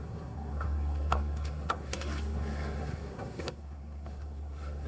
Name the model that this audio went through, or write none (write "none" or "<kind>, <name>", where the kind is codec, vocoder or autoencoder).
codec, SNAC